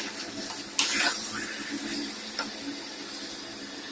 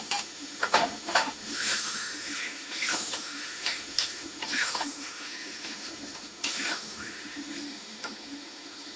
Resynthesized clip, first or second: second